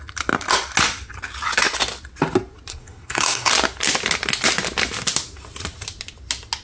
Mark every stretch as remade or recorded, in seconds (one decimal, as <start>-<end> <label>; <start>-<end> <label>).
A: 0.0-2.7 recorded; 2.7-3.5 remade; 3.5-6.6 recorded